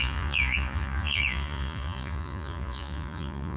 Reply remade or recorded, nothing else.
remade